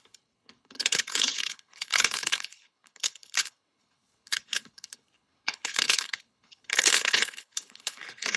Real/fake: fake